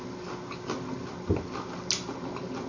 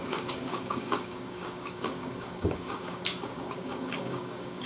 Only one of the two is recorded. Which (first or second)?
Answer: first